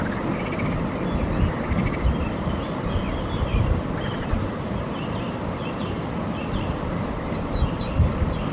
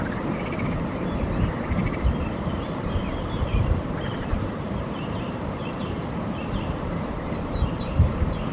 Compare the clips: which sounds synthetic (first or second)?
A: second